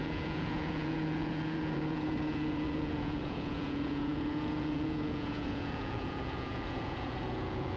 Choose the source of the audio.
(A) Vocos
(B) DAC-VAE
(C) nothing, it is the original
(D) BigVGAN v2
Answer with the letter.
A